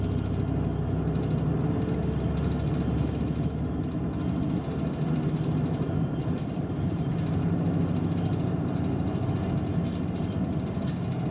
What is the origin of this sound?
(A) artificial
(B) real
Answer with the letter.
B